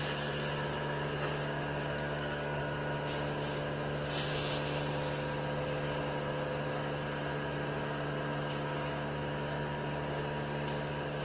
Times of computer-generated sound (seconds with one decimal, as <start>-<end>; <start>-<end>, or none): 1.3-2.6